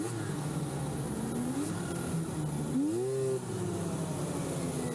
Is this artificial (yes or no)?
no